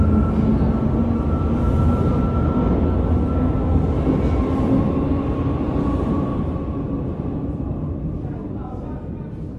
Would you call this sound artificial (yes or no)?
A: no